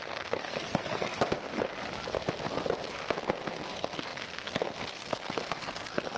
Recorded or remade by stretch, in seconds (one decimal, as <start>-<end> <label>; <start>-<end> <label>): 0.0-1.5 remade; 1.5-2.9 recorded; 2.9-6.2 remade